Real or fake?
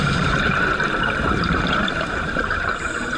fake